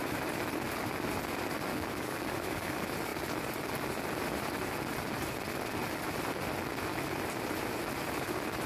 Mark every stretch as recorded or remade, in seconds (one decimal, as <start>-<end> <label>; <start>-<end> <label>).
0.0-1.7 recorded; 1.7-2.7 remade; 2.7-8.7 recorded